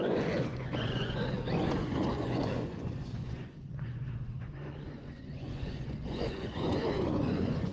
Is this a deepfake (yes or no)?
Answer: yes